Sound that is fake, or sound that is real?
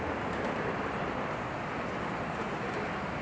real